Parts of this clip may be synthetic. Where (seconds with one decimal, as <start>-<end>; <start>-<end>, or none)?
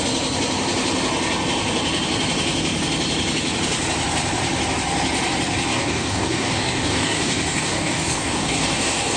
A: 5.7-9.2